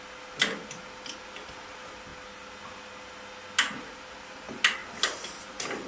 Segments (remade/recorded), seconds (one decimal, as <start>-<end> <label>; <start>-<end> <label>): 0.0-5.9 recorded